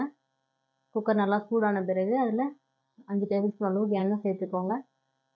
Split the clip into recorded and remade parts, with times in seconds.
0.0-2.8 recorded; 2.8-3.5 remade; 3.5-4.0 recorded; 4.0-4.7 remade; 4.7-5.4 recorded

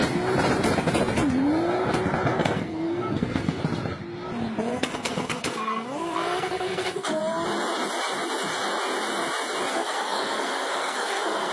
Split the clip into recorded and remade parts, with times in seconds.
0.0-2.3 recorded; 2.3-3.6 remade; 3.6-4.7 recorded; 4.7-7.2 remade; 7.2-9.7 recorded; 9.7-11.5 remade

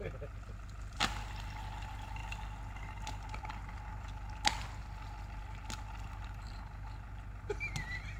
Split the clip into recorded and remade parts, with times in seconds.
0.0-8.2 recorded

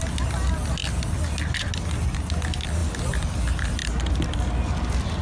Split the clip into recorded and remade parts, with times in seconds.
0.0-5.2 recorded

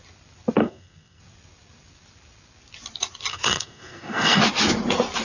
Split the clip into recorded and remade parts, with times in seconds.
0.0-0.6 recorded; 0.6-1.2 remade; 1.2-3.3 recorded; 3.3-4.4 remade; 4.4-5.2 recorded